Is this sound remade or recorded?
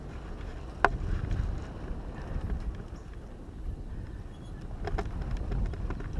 recorded